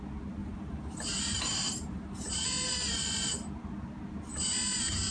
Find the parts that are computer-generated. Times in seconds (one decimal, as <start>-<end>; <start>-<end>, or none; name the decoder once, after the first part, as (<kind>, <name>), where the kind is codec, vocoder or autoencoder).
0.4-3.5 (vocoder, BigVGAN v2)

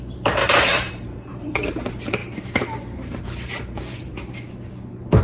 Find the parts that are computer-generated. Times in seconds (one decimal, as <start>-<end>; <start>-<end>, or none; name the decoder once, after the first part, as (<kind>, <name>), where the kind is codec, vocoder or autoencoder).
0.0-4.1 (vocoder, BigVGAN v2)

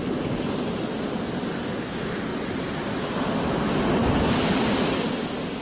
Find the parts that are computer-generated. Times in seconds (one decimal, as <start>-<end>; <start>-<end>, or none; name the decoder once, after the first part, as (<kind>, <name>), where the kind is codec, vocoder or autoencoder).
2.3-3.1 (vocoder, BigVGAN v2)

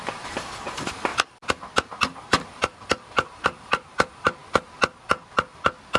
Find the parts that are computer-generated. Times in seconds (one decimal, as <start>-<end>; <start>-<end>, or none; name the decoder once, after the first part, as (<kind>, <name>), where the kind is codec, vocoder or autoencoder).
0.0-1.1 (vocoder, BigVGAN v2); 2.0-4.4